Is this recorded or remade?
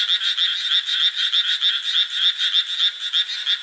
recorded